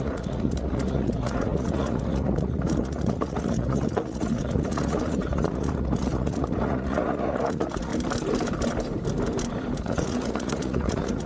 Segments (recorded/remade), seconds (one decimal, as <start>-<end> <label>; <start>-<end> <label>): 0.0-7.9 remade; 7.9-9.8 recorded; 9.8-11.3 remade